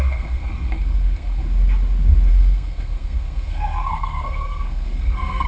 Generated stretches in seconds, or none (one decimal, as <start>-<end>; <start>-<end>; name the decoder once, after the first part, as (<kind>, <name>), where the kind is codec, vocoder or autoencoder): 0.0-1.4 (codec, SNAC); 2.3-5.5